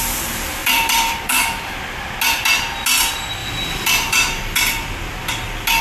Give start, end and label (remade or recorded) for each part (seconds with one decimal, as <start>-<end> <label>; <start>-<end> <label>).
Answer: 0.0-0.6 recorded; 0.6-1.7 remade; 1.7-3.4 recorded; 3.4-4.6 remade; 4.6-5.8 recorded